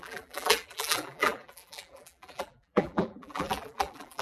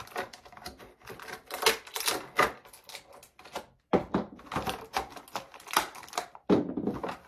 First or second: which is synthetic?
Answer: first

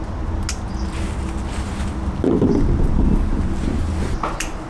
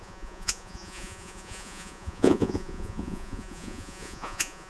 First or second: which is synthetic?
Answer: second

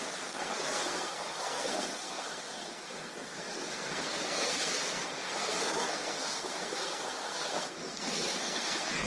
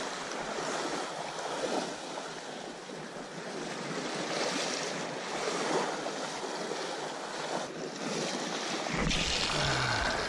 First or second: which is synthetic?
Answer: first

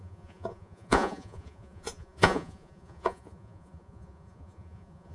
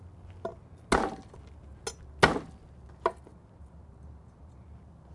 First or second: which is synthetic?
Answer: first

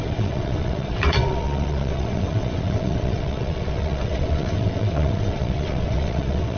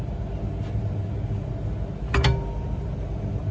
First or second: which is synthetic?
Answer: first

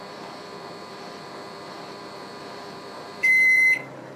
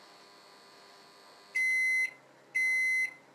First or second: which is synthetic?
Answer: first